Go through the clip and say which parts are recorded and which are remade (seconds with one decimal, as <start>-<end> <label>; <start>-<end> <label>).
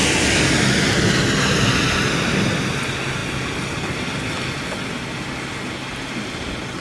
0.0-6.8 recorded